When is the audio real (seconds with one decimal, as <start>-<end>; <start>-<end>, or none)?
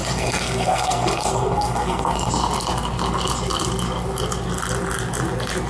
2.3-5.7